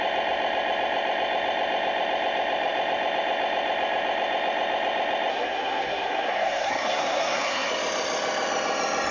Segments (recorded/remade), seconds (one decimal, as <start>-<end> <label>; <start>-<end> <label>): 0.0-5.3 recorded; 5.3-7.7 remade; 7.7-9.1 recorded